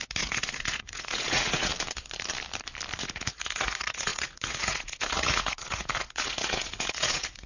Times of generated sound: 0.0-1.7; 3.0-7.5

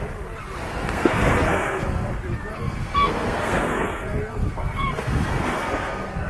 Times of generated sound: 0.7-2.1; 2.5-6.3

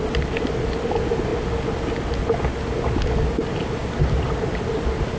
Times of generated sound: none

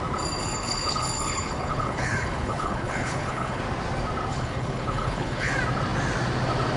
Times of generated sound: 0.4-3.6; 4.3-5.5

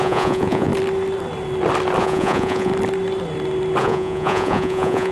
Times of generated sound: 0.0-0.7; 2.0-2.7; 3.8-5.1

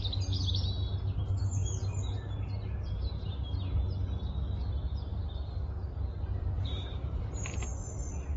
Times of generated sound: 5.1-7.3